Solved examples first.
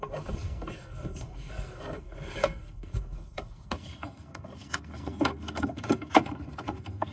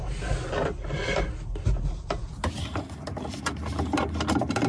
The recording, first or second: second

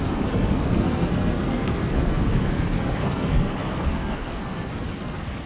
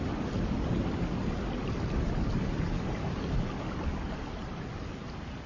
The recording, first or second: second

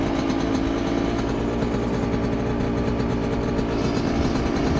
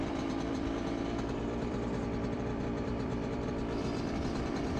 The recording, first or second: first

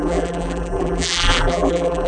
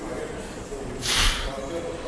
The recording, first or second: second